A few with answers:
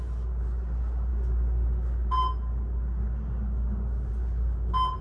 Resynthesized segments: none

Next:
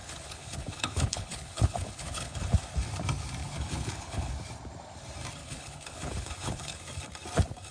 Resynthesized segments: 0.0-2.5 (codec, HILCodec); 3.4-4.3; 5.4-6.8

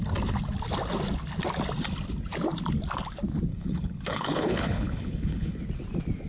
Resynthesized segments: 3.5-5.6 (codec, HILCodec)